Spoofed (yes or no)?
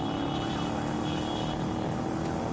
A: no